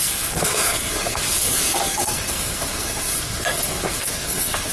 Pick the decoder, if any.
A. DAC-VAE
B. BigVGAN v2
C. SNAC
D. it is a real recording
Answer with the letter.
C